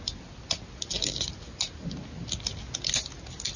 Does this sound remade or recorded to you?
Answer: recorded